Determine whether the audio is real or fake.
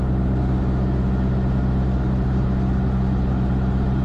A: real